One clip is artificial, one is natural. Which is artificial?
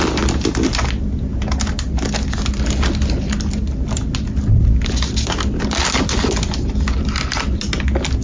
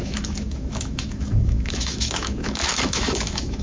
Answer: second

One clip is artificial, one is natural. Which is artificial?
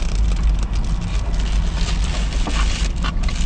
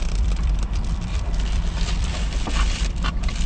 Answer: second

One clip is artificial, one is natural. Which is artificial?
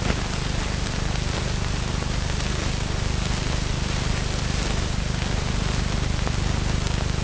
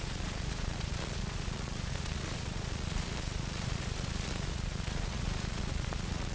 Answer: second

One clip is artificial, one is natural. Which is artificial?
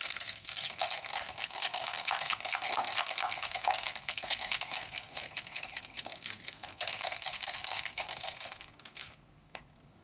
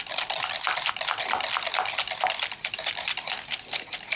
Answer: first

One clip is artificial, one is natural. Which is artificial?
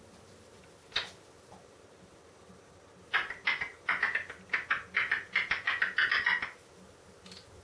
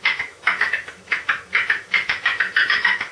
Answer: second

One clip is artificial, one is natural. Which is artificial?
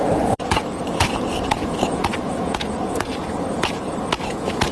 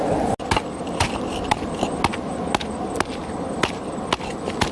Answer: first